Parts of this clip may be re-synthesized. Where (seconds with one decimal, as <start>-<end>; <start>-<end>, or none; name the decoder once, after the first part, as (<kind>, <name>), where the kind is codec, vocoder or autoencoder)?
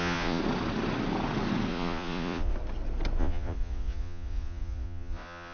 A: 0.0-0.4 (vocoder, Vocos); 1.7-2.5; 3.2-5.5